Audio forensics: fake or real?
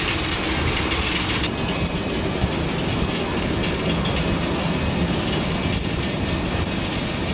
real